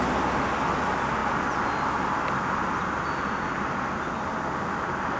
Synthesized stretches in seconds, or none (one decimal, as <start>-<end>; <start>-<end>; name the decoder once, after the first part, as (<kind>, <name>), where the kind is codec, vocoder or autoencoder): none